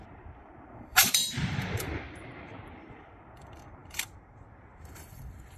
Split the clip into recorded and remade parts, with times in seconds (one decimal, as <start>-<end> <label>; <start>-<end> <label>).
0.0-5.6 remade

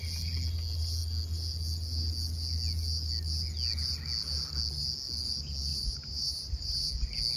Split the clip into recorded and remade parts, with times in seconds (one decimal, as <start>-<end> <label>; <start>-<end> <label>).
0.0-5.7 recorded; 5.7-6.9 remade; 6.9-7.4 recorded

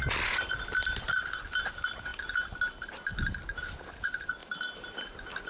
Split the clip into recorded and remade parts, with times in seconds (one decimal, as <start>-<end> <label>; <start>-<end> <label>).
0.0-2.1 remade; 2.1-3.9 recorded; 3.9-4.4 remade; 4.4-5.0 recorded; 5.0-5.5 remade

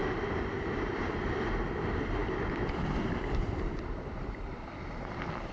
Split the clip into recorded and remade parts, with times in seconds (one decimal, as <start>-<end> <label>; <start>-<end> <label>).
0.0-1.3 remade; 1.3-2.2 recorded; 2.2-5.5 remade

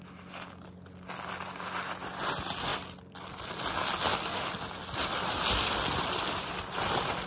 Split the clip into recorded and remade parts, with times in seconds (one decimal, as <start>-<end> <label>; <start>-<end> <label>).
0.0-2.7 recorded; 2.7-3.8 remade; 3.8-7.3 recorded

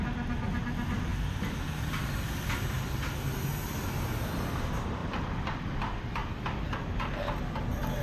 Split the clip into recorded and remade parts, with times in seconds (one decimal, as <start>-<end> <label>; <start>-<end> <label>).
0.0-8.0 recorded

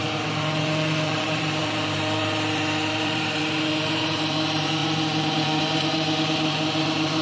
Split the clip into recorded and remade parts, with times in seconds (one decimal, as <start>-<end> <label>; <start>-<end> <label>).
0.0-7.2 remade